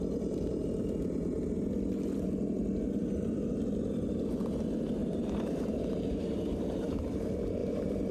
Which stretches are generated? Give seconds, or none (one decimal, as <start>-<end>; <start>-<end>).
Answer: 5.0-7.1; 7.6-8.1